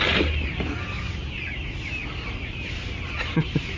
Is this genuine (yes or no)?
yes